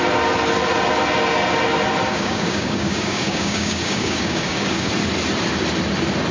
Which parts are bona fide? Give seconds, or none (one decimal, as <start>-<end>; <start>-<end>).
0.0-2.1; 4.9-6.3